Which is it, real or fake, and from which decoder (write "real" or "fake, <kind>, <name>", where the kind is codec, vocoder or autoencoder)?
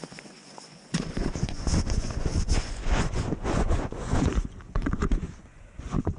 fake, vocoder, Vocos